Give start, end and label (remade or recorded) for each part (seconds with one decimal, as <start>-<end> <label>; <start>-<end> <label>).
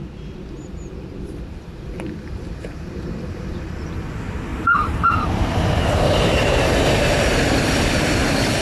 0.0-4.5 recorded; 4.5-7.8 remade; 7.8-8.6 recorded